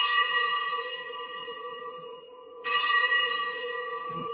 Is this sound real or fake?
fake